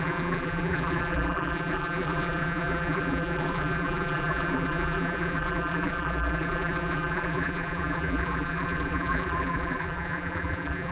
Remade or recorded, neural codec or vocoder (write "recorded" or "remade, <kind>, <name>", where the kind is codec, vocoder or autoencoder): remade, vocoder, BigVGAN v2